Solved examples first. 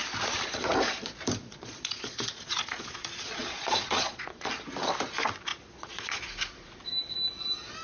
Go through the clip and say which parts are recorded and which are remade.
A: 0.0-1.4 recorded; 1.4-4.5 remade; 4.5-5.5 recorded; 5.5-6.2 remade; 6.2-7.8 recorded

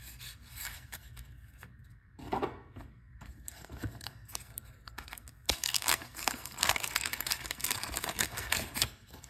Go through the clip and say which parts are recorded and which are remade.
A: 0.0-9.3 remade